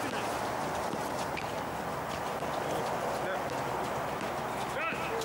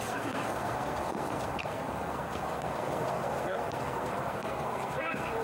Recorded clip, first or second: first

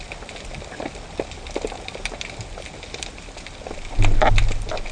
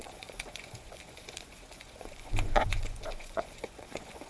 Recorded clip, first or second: first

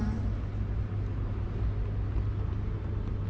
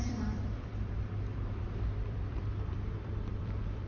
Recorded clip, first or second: first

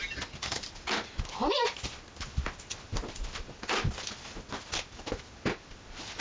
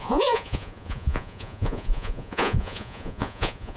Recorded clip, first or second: first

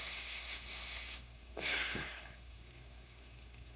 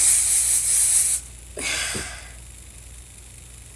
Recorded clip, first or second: second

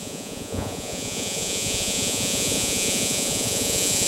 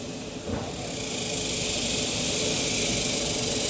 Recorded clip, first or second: second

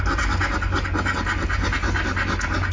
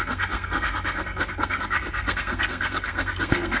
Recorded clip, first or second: first